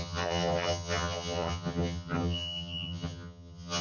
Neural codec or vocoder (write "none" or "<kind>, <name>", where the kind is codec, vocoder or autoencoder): vocoder, HiFi-GAN